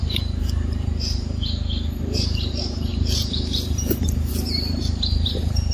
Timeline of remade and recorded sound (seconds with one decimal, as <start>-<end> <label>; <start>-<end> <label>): 0.0-5.7 remade